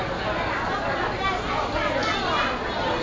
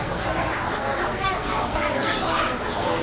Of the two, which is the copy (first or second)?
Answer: second